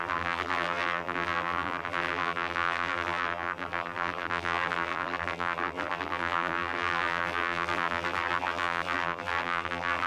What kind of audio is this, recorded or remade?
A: remade